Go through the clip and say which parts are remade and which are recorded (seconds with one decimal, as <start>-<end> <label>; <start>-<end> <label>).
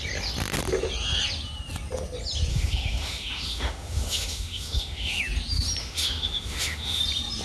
0.0-2.5 recorded; 2.5-5.2 remade; 5.2-5.8 recorded; 5.8-7.0 remade; 7.0-7.4 recorded